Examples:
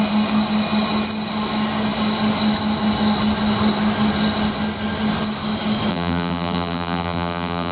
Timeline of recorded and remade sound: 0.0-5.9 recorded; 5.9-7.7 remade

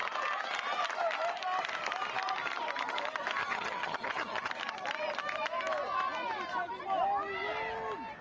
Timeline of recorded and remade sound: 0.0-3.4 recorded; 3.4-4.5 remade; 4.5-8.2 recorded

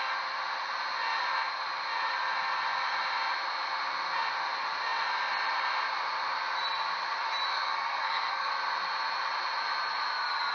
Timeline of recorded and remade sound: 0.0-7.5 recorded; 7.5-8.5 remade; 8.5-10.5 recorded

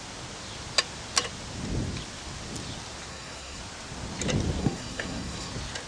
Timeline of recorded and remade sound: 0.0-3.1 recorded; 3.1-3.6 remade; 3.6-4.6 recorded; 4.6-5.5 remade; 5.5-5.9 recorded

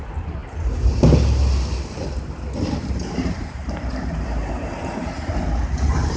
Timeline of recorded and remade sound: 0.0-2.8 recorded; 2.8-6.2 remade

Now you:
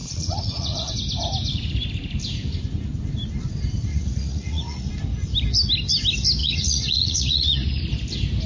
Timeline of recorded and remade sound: 0.0-0.9 remade; 0.9-3.9 recorded; 3.9-4.9 remade; 4.9-6.4 recorded; 6.4-7.8 remade; 7.8-8.5 recorded

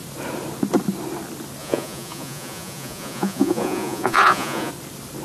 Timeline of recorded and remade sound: 0.0-1.6 recorded; 1.6-4.7 remade; 4.7-5.2 recorded